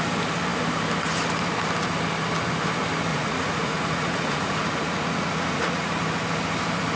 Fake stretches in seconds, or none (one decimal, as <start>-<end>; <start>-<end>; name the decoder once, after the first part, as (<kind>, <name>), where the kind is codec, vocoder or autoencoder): 3.1-5.9 (vocoder, Vocos)